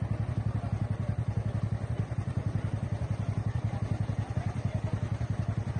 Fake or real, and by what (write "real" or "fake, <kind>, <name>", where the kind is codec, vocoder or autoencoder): real